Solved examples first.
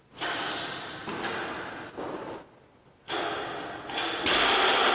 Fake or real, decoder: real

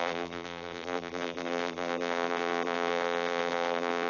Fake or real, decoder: fake, vocoder, BigVGAN v2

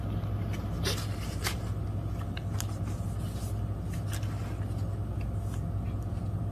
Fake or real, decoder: real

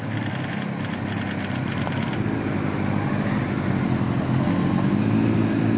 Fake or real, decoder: real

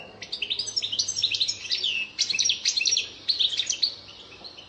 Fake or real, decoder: real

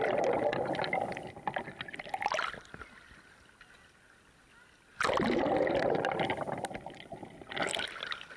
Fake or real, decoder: real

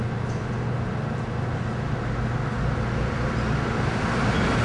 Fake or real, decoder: real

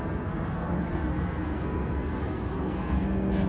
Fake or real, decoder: fake, codec, SNAC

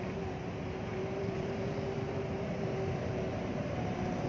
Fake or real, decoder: fake, vocoder, BigVGAN v2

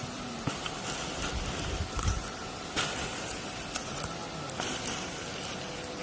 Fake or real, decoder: real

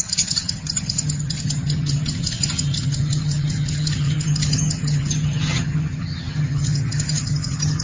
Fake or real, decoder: fake, vocoder, HiFi-GAN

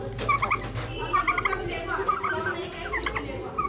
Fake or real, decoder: real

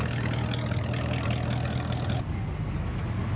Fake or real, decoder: real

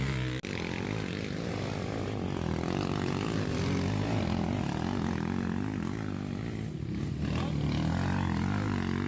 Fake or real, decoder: real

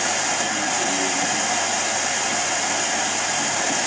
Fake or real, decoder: real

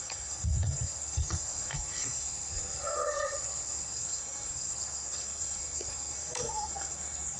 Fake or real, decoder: fake, codec, SNAC